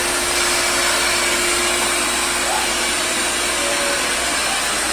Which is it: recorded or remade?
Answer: recorded